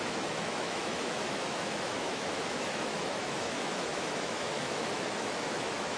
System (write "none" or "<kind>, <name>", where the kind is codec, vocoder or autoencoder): autoencoder, DAC-VAE